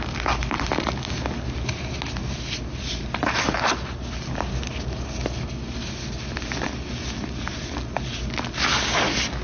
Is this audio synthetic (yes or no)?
no